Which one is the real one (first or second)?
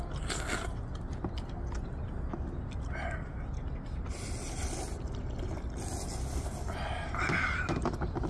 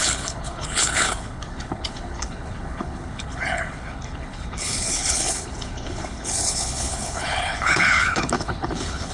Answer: first